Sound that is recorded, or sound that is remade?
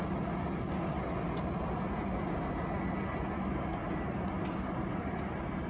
recorded